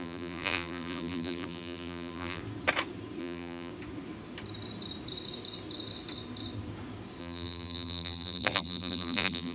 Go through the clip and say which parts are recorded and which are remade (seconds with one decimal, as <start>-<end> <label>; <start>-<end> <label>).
0.0-2.4 remade; 2.4-3.2 recorded; 3.2-3.7 remade; 3.7-7.2 recorded; 7.2-9.5 remade